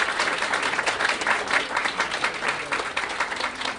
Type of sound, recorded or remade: recorded